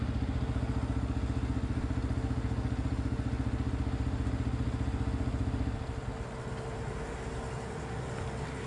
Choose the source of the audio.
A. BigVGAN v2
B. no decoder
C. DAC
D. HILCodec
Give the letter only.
B